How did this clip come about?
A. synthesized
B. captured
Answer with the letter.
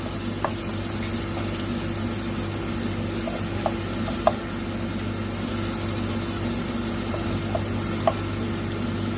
B